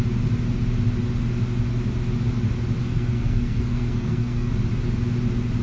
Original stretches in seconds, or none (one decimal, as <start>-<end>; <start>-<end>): 0.0-2.8; 4.5-5.6